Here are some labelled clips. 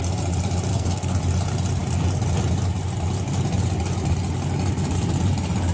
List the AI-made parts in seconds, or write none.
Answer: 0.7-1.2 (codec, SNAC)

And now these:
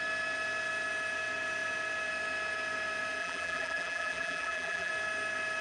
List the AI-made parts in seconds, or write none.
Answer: 3.2-4.9 (vocoder, BigVGAN v2)

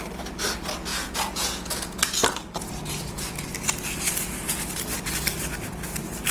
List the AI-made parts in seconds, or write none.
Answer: 0.9-2.0 (vocoder, Vocos)